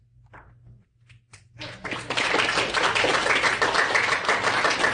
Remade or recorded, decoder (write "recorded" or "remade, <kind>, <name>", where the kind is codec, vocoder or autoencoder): recorded